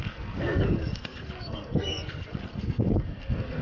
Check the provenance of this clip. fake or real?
fake